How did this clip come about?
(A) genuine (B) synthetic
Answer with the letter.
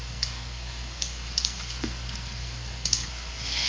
B